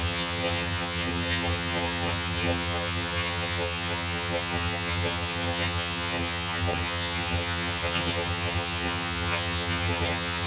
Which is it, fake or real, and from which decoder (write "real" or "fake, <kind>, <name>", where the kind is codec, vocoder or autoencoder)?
fake, vocoder, HiFi-GAN